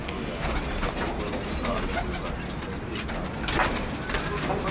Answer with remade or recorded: recorded